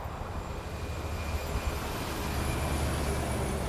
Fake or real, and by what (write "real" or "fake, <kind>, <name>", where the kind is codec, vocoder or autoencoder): real